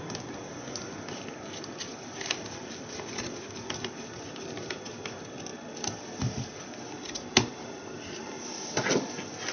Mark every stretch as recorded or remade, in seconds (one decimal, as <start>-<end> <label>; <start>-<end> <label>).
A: 0.0-9.5 recorded